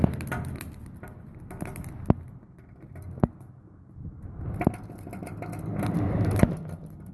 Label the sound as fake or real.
real